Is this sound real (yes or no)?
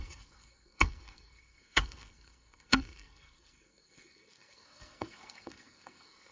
no